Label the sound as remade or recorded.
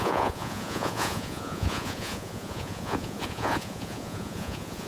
remade